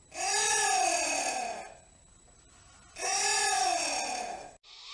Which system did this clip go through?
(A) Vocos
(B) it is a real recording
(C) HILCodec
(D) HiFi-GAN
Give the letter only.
B